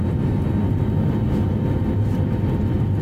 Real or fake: real